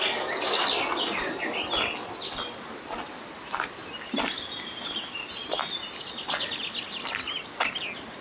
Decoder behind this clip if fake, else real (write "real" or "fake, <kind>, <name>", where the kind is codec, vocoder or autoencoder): real